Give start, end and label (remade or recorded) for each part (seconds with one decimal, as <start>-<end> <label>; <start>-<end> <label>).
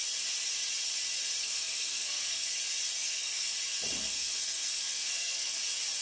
0.0-1.4 recorded; 1.4-2.5 remade; 2.5-3.0 recorded; 3.0-3.5 remade; 3.5-4.0 recorded; 4.0-5.6 remade; 5.6-6.0 recorded